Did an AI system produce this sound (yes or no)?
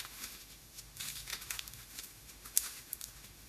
yes